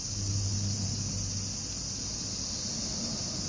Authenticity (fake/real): real